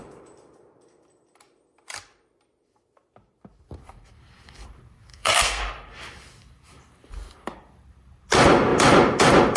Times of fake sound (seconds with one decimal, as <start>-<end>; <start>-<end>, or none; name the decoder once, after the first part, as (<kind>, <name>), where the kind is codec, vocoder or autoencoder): 5.1-5.6 (codec, SNAC)